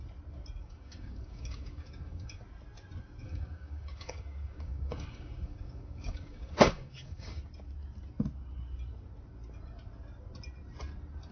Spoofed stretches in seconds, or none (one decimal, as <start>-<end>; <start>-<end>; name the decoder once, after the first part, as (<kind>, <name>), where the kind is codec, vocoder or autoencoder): 0.6-2.4 (codec, DAC); 3.2-7.4